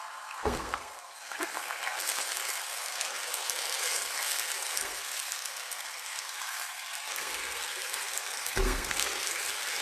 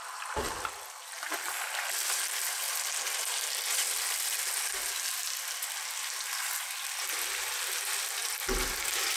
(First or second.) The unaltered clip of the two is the second